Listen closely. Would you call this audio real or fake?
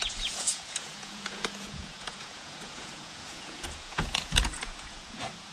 fake